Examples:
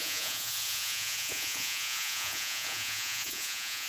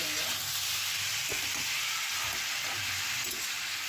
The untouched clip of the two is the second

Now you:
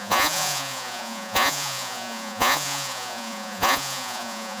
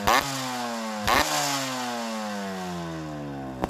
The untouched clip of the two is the second